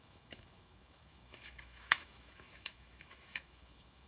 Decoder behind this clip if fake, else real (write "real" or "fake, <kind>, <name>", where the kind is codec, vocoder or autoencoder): fake, autoencoder, DAC-VAE